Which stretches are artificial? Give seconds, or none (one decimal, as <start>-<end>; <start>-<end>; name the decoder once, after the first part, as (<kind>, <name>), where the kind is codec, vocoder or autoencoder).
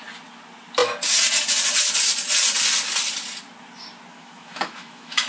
4.1-5.3 (autoencoder, DAC-VAE)